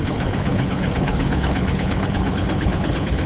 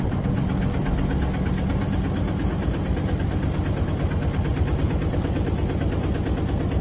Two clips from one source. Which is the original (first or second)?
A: second